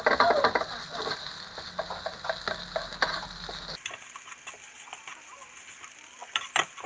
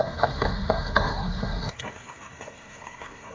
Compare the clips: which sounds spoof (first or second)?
second